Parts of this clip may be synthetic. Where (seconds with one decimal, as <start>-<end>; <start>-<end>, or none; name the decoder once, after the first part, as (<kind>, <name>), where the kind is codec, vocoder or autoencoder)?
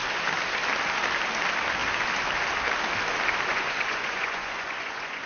3.5-5.3 (vocoder, Vocos)